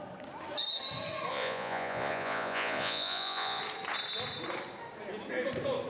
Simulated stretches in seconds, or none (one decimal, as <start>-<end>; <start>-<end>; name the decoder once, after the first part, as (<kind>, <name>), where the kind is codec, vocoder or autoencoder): 1.3-3.6 (vocoder, Vocos)